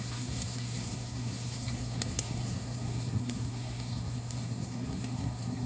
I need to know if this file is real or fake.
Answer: fake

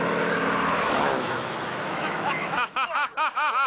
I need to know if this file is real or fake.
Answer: fake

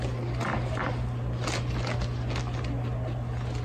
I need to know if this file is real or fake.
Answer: real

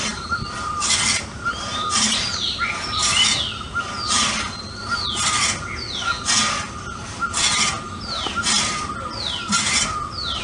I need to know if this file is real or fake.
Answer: real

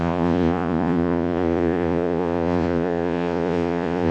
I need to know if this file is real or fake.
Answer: fake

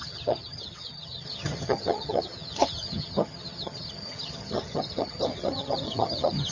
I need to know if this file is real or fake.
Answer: fake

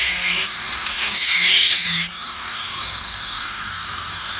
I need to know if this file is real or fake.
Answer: fake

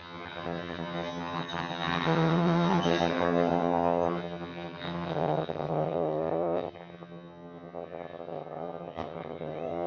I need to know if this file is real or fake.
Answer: fake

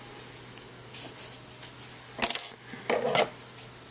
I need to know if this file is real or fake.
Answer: real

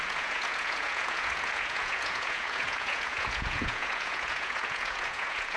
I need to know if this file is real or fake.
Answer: fake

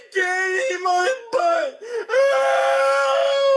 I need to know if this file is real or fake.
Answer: fake